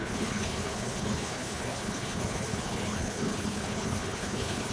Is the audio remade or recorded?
remade